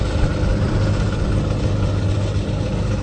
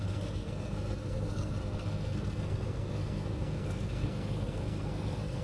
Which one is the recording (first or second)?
first